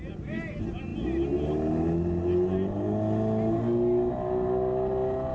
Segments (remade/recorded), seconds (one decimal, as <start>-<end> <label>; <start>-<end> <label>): 0.0-5.3 recorded